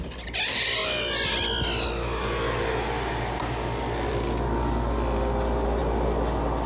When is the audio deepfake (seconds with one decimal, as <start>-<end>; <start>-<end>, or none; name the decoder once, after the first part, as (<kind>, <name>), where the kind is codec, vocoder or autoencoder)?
none